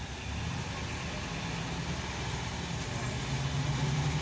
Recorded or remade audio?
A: recorded